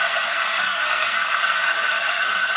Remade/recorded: remade